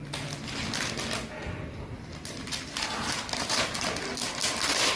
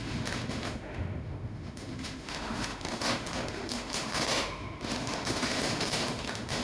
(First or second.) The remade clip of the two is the second